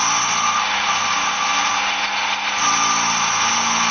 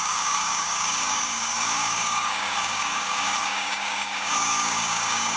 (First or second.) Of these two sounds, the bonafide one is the first